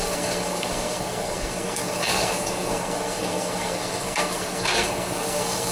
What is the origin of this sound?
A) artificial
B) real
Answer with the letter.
A